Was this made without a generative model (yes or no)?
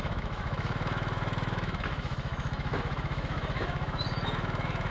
no